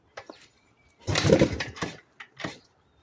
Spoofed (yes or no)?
yes